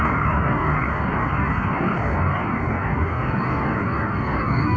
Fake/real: fake